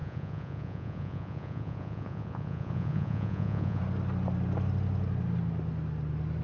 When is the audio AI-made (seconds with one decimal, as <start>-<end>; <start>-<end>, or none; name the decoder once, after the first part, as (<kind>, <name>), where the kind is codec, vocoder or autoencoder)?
0.0-3.8 (vocoder, Vocos)

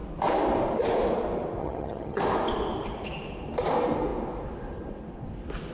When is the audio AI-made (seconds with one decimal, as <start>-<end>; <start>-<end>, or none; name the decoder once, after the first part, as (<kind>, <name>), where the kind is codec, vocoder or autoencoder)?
1.6-2.2 (vocoder, HiFi-GAN)

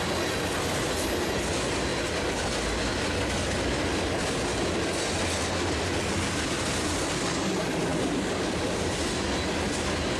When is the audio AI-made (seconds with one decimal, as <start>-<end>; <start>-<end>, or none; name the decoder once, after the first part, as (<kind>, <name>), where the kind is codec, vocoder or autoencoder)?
none

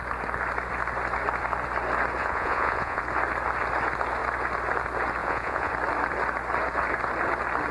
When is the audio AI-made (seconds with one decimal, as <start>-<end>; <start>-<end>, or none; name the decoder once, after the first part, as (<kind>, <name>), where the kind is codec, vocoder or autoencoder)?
2.2-3.0 (vocoder, Vocos); 5.2-5.7